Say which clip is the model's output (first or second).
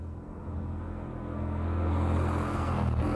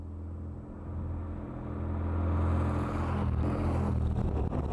first